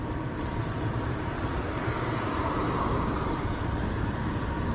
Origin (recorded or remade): recorded